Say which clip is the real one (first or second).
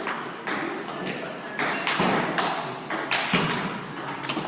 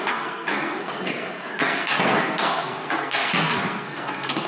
first